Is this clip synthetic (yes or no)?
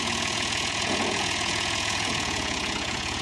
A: yes